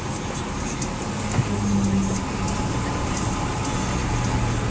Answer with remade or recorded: recorded